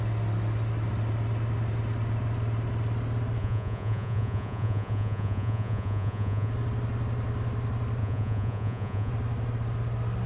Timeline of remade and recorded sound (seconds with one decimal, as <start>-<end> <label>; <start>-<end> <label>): 0.0-3.4 recorded; 3.4-6.5 remade; 6.5-8.0 recorded; 8.0-9.1 remade; 9.1-10.3 recorded